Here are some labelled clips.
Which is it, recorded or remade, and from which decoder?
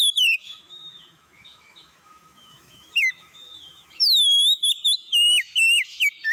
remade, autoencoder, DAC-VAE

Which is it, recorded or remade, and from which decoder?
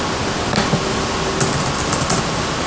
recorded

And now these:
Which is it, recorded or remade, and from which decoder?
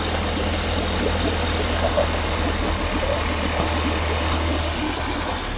recorded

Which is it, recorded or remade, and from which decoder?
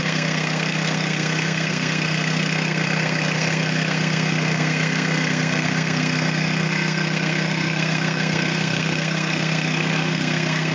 remade, codec, SNAC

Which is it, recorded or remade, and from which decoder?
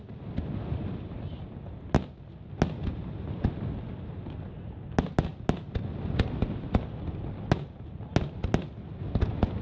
recorded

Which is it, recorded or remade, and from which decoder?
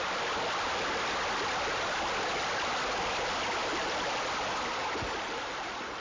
recorded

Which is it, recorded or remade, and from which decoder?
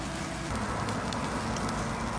recorded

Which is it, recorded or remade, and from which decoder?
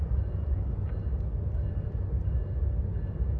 recorded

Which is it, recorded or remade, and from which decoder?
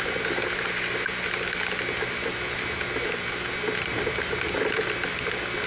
recorded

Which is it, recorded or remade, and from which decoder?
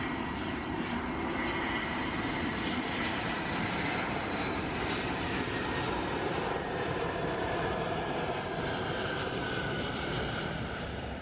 remade, vocoder, BigVGAN v2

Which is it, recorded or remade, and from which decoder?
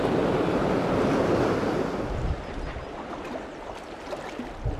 recorded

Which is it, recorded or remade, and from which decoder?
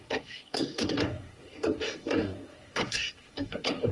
remade, codec, SNAC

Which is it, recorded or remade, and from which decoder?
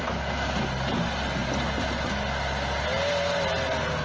recorded